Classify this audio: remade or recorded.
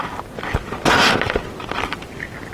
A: recorded